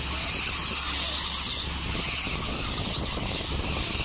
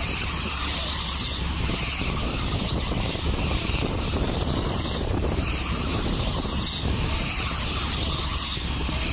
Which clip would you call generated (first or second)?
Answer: second